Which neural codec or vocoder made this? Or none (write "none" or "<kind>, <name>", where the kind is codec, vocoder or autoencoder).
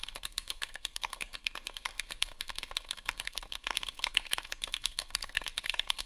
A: codec, SNAC